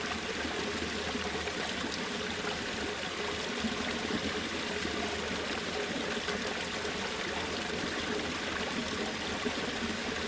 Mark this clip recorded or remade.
recorded